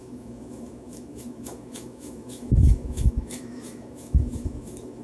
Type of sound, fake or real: fake